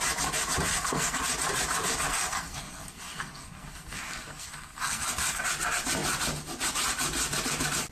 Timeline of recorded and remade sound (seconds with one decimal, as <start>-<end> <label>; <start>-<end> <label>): 0.0-0.7 recorded; 0.7-1.2 remade; 1.2-2.1 recorded; 2.1-5.4 remade; 5.4-7.9 recorded